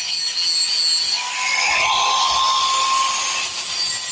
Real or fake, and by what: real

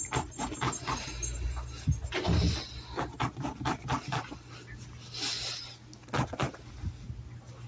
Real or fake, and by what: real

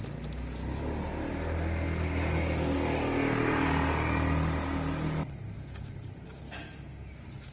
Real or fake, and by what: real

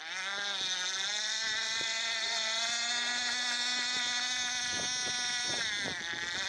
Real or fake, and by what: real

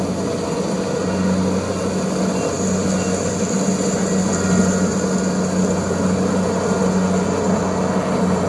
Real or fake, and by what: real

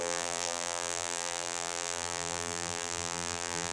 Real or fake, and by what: fake, vocoder, BigVGAN v2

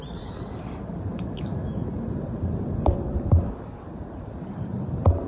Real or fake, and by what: fake, vocoder, BigVGAN v2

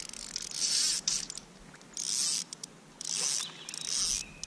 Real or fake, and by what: real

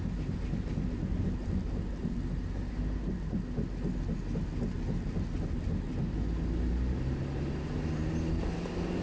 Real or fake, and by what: real